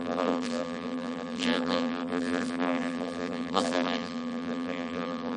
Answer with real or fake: fake